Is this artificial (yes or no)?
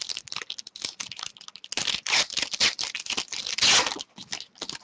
no